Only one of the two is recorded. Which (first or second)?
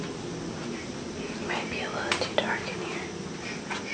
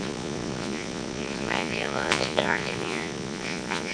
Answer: first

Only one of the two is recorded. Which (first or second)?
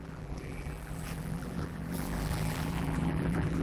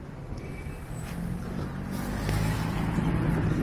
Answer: second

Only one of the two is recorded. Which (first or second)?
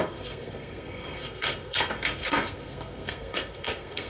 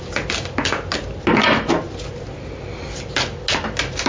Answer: second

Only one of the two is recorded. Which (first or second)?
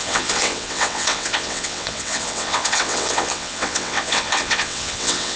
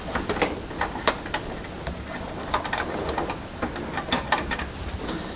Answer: second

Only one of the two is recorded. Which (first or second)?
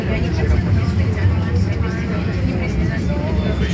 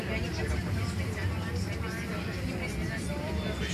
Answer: second